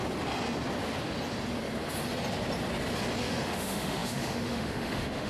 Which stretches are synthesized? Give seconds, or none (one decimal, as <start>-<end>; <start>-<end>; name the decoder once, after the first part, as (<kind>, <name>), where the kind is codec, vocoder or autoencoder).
3.2-5.3 (autoencoder, DAC-VAE)